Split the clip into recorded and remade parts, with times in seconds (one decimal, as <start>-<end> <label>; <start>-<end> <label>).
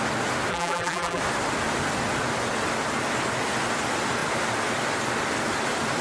0.0-0.5 recorded; 0.5-1.2 remade; 1.2-6.0 recorded